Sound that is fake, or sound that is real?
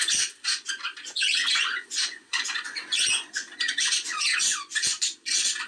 fake